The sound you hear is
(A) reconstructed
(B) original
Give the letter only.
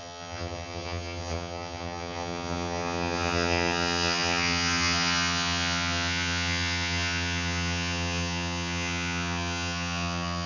A